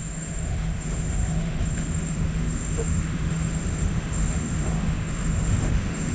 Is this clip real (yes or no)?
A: no